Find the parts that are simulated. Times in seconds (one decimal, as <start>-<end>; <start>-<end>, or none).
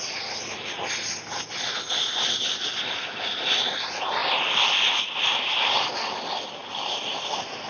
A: 4.2-5.0